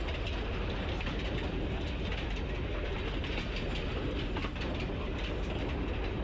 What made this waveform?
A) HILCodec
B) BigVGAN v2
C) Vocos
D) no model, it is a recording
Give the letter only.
D